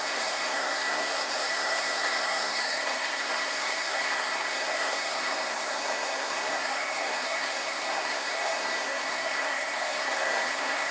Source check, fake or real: fake